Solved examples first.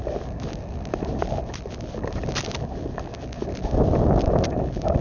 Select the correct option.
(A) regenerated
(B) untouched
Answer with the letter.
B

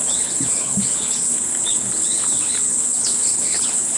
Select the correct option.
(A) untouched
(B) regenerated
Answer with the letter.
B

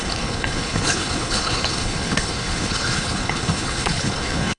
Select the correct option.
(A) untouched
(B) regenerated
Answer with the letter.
B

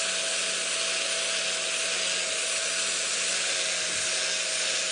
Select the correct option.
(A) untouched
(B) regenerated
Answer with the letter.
A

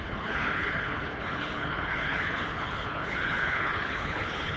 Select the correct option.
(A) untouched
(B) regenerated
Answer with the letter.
B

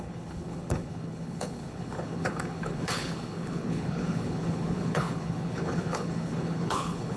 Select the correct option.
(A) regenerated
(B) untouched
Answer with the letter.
A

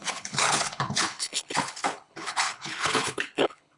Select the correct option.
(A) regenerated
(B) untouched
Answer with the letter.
A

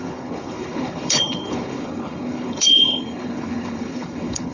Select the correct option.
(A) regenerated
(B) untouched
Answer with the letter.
A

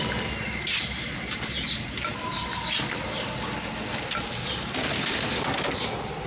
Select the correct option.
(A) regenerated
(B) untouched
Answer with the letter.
B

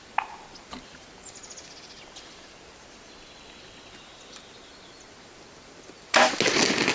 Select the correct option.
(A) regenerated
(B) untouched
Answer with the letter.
B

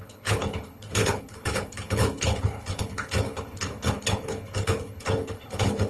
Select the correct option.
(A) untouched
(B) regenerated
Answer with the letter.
B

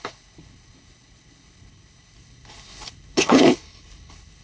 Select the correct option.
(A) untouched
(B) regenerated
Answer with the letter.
B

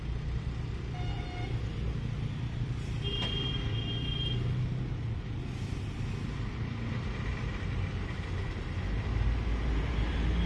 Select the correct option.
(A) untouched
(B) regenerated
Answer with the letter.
A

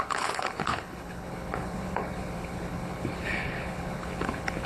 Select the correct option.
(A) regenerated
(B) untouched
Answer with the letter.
A